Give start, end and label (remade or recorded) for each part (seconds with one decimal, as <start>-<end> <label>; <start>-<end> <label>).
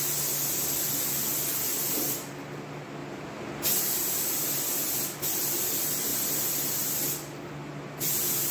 0.0-8.5 recorded